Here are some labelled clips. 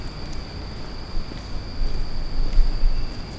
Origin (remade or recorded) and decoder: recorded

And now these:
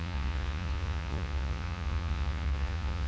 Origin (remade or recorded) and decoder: remade, vocoder, Vocos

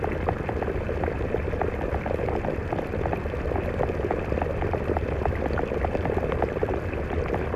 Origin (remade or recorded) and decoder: recorded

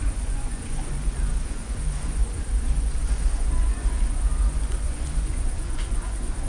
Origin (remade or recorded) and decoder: remade, vocoder, Vocos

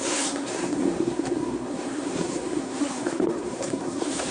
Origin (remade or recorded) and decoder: remade, codec, SNAC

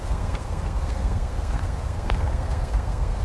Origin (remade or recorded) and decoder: remade, codec, SNAC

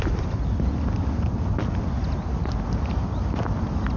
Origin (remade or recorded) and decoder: recorded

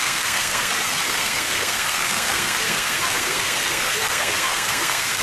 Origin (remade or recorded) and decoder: remade, codec, SNAC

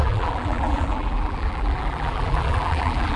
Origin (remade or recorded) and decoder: remade, vocoder, BigVGAN v2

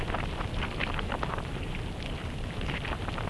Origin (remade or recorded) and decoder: recorded